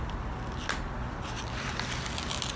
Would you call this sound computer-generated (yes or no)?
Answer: no